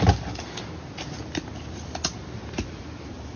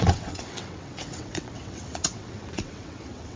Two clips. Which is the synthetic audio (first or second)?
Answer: second